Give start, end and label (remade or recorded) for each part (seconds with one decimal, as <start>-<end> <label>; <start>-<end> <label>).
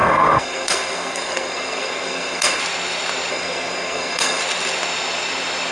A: 0.0-2.6 remade; 2.6-3.3 recorded; 3.3-4.4 remade; 4.4-5.7 recorded